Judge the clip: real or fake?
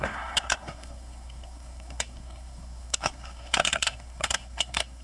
fake